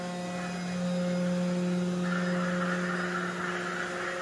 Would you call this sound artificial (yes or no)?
no